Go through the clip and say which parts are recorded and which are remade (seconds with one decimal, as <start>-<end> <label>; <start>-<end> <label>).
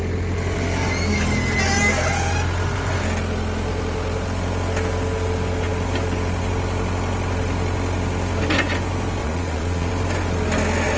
0.0-9.2 recorded; 9.2-9.9 remade; 9.9-11.0 recorded